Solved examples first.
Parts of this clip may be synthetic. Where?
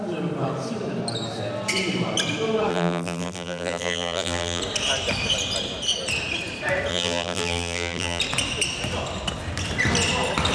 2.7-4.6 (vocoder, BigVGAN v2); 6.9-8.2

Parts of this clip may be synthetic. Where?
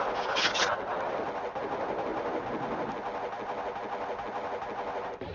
none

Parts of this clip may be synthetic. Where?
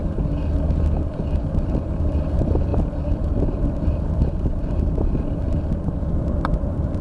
1.4-4.5 (vocoder, BigVGAN v2); 5.9-7.0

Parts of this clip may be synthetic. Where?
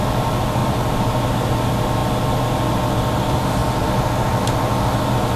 0.6-1.5 (vocoder, BigVGAN v2)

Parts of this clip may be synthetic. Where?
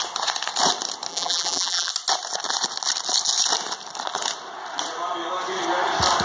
1.1-1.9 (vocoder, BigVGAN v2)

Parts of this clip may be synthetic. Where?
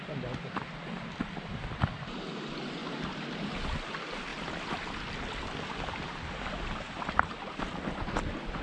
none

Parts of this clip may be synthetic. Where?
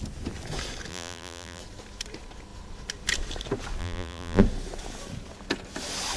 0.9-1.6 (vocoder, BigVGAN v2); 3.8-4.4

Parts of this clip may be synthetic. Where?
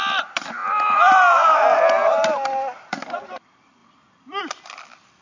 0.0-0.6 (vocoder, BigVGAN v2); 1.8-3.8; 4.4-5.2